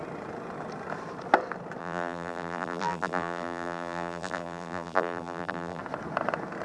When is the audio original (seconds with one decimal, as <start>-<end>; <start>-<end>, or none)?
0.0-1.8; 5.8-6.6